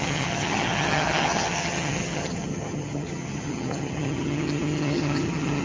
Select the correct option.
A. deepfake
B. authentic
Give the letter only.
A